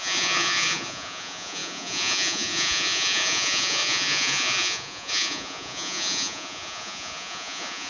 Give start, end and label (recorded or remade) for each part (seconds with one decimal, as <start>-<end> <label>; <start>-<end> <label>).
0.0-7.9 remade